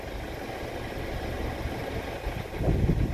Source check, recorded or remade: recorded